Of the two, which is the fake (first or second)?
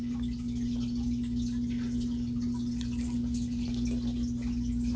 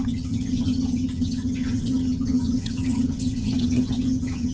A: second